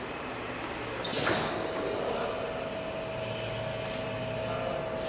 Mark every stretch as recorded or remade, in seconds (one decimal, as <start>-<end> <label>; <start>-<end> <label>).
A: 0.0-5.1 recorded